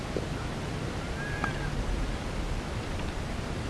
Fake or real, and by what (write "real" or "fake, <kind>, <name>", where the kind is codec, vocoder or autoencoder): real